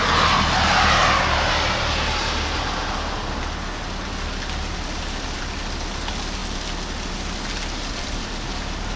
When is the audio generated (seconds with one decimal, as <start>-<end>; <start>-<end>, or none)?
none